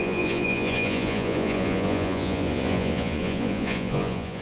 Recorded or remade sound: remade